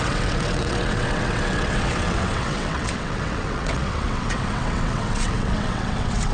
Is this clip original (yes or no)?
no